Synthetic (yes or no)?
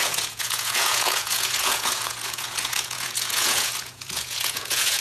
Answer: yes